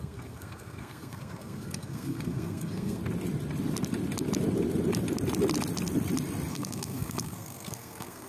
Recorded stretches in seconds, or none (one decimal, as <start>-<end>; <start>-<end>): 3.0-6.5